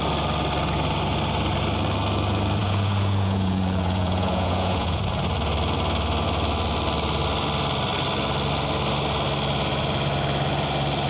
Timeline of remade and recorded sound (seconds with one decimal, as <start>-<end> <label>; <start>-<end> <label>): 0.0-2.6 recorded; 2.6-5.0 remade; 5.0-11.1 recorded